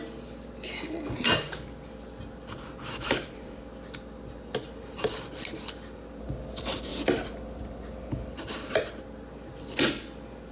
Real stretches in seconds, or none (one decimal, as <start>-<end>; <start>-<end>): 0.0-10.5